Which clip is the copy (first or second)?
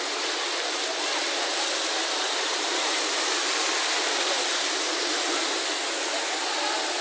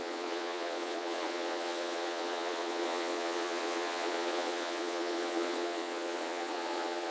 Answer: second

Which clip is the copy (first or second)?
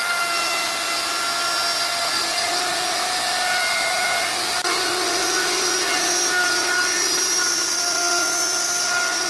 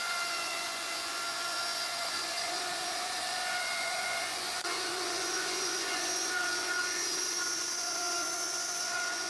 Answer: second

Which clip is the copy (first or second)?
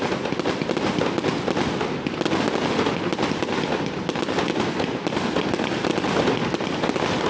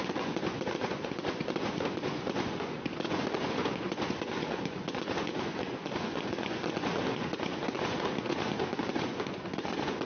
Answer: second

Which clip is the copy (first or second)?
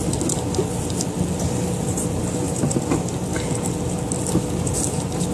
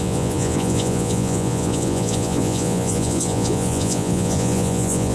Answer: second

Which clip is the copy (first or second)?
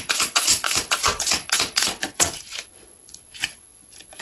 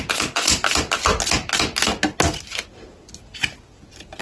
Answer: first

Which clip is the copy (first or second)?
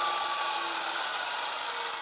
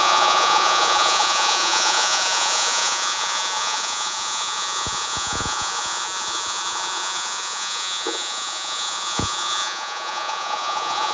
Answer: second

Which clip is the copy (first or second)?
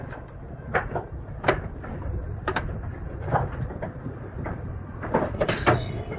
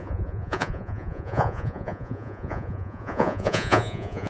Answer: second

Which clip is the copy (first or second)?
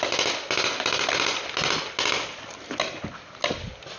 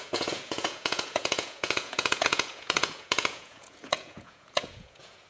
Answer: second